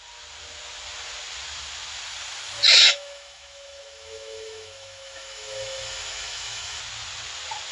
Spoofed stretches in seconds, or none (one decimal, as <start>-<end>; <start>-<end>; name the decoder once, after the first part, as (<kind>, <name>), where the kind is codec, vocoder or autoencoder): 2.7-6.8 (autoencoder, DAC-VAE)